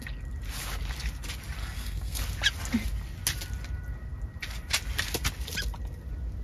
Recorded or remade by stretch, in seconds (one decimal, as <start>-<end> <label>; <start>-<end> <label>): 0.0-1.6 recorded; 1.6-2.2 remade; 2.2-6.4 recorded